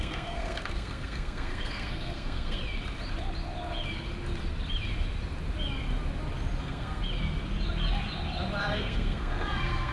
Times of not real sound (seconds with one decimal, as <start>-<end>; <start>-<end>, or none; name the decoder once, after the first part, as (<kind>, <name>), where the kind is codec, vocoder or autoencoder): 0.0-2.6 (codec, SNAC); 6.6-7.0; 8.6-9.9